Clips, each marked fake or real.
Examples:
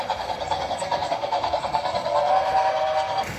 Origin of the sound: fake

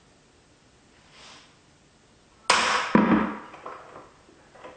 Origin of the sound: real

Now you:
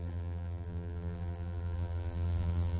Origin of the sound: fake